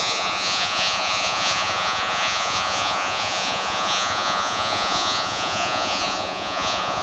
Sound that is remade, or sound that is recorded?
remade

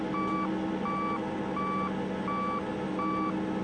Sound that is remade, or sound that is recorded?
recorded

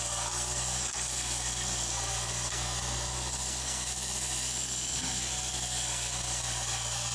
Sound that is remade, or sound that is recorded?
remade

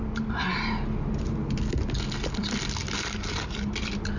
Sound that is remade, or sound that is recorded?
recorded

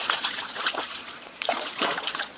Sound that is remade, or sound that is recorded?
remade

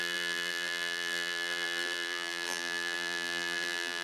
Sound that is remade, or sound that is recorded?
remade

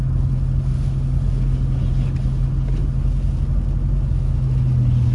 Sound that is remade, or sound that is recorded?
recorded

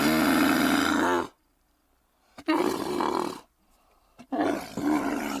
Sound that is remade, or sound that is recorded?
remade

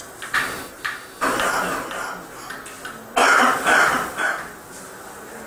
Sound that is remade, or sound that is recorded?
recorded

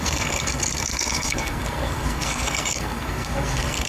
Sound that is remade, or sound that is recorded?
remade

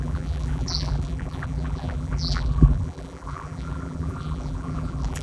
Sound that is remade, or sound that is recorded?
remade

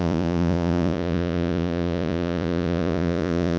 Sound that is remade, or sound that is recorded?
remade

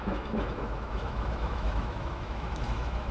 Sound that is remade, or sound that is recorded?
remade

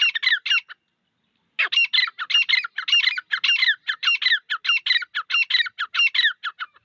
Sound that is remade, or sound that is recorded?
recorded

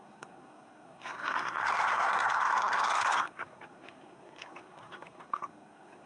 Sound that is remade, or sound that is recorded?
remade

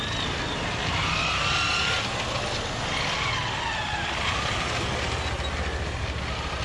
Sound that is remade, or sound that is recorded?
recorded